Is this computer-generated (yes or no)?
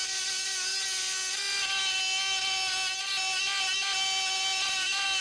no